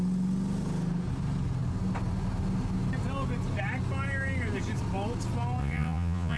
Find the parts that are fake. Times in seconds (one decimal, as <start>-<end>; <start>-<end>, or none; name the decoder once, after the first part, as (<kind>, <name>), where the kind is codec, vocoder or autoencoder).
5.6-6.4 (vocoder, Vocos)